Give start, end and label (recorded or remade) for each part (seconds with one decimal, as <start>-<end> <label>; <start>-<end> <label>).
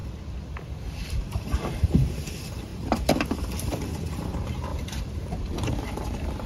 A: 0.0-0.7 recorded; 0.7-6.5 remade